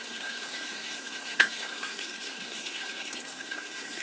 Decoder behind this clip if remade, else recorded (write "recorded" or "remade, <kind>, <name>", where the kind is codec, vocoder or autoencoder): remade, codec, SNAC